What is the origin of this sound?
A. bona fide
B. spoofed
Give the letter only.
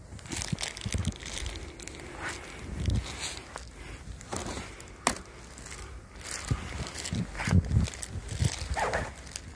A